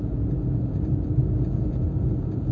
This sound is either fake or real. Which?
fake